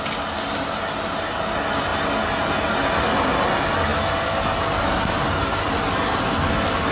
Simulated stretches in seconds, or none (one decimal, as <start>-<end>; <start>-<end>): none